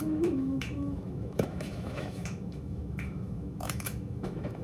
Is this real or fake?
fake